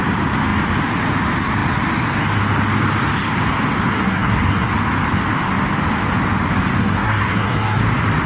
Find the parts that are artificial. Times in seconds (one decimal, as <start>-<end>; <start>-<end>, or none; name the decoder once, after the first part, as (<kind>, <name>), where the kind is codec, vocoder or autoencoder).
3.9-4.7 (codec, SNAC); 6.8-7.8